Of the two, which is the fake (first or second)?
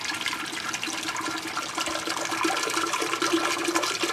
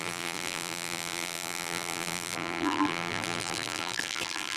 second